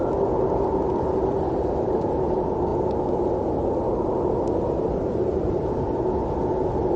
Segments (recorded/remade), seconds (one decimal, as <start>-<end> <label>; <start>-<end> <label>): 0.0-7.0 recorded